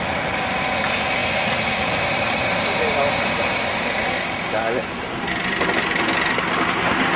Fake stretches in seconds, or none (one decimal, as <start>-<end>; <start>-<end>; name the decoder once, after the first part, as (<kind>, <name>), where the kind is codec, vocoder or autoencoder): none

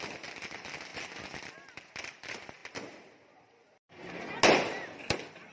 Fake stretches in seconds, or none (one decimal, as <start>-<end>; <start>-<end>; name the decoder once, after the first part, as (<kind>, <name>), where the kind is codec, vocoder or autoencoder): none